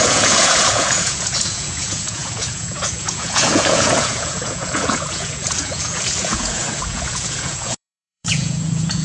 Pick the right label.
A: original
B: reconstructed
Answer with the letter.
B